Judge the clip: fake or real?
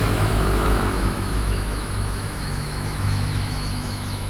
fake